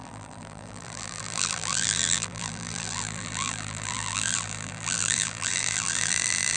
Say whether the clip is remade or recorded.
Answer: remade